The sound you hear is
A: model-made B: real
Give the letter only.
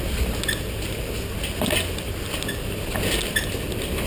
B